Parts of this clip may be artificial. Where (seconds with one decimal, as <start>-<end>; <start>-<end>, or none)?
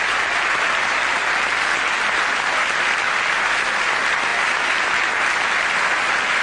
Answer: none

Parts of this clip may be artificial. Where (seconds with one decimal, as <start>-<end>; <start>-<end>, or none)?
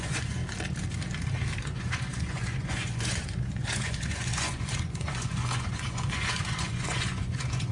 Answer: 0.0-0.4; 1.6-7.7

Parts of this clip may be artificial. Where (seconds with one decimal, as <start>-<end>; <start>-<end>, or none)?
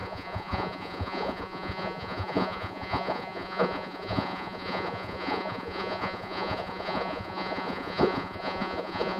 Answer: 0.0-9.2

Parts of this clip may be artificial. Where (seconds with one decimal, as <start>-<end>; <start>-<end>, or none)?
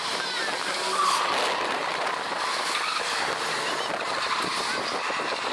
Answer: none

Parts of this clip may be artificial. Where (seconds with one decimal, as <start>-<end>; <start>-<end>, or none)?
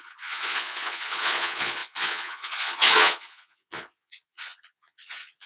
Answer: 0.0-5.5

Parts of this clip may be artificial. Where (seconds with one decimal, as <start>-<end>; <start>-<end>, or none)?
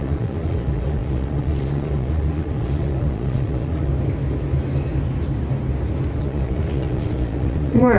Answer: 0.0-3.9; 6.2-8.0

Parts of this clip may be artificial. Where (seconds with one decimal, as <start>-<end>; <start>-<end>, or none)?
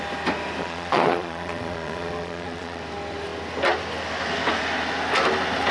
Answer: 0.6-2.8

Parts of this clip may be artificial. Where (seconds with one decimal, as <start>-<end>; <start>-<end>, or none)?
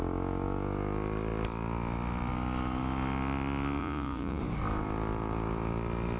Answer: 3.8-4.4